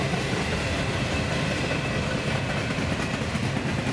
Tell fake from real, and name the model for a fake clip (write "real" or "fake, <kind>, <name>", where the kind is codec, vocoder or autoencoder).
real